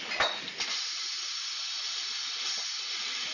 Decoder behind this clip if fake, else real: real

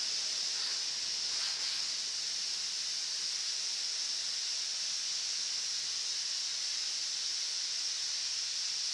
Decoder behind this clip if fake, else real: real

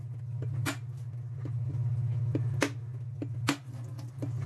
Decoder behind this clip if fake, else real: real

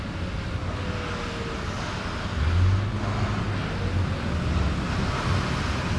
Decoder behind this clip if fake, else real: real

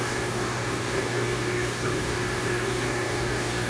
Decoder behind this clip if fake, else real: fake, codec, DAC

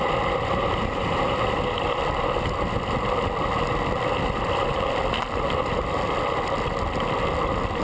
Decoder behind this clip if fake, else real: real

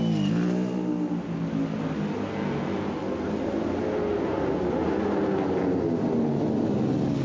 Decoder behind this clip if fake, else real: real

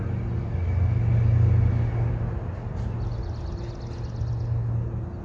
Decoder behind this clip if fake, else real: real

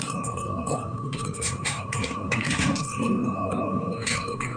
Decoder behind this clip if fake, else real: fake, codec, SNAC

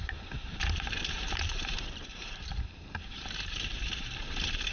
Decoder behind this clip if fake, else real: fake, vocoder, BigVGAN v2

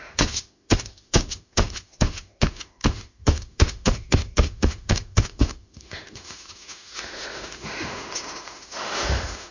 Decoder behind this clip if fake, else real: fake, autoencoder, DAC-VAE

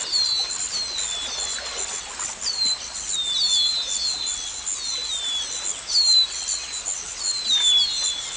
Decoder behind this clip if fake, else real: real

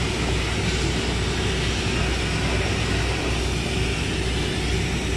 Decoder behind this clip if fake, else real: real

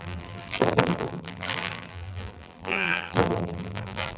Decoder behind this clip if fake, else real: fake, vocoder, BigVGAN v2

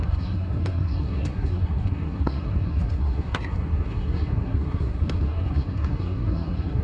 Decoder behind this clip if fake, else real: fake, codec, SNAC